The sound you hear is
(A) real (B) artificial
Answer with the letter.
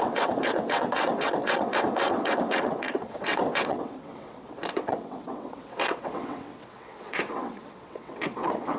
B